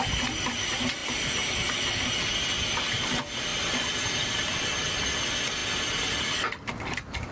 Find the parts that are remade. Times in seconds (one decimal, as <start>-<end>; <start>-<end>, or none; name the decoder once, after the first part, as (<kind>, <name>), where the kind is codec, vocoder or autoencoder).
none